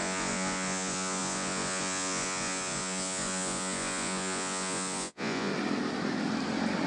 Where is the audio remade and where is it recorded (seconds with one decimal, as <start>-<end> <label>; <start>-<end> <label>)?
0.0-5.5 remade; 5.5-6.9 recorded